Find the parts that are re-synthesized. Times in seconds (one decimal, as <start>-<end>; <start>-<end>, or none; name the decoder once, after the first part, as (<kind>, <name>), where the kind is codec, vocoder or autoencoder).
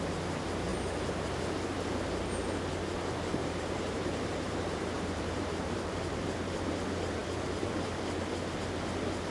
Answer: 3.4-6.7 (vocoder, BigVGAN v2)